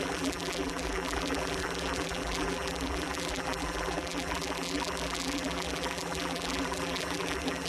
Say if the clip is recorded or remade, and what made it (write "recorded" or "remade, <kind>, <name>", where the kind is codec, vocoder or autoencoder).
remade, vocoder, BigVGAN v2